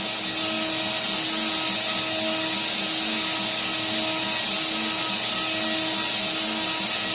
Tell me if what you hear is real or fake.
real